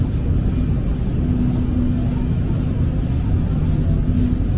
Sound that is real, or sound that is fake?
real